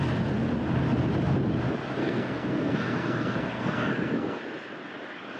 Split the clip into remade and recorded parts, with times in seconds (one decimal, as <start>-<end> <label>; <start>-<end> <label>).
0.0-2.0 recorded; 2.0-4.4 remade; 4.4-5.4 recorded